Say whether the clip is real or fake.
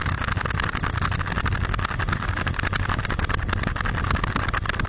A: real